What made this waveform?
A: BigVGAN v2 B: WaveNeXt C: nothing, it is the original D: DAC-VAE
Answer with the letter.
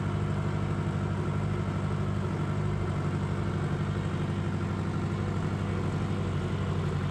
C